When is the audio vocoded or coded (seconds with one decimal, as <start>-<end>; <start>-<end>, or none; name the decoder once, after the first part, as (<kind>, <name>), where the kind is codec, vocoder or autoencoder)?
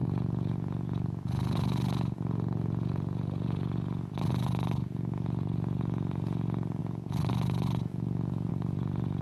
none